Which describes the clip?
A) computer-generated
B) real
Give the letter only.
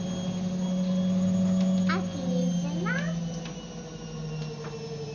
B